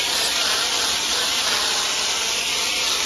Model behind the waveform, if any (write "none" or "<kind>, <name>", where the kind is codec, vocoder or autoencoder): none